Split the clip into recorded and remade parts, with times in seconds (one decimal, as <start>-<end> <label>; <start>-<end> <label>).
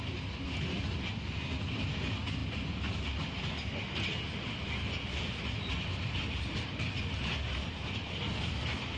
0.0-9.0 recorded